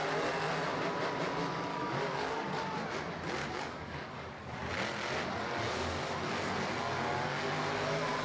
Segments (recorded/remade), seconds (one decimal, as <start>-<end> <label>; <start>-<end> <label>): 0.0-1.7 recorded; 1.7-2.6 remade; 2.6-3.4 recorded; 3.4-4.7 remade; 4.7-8.2 recorded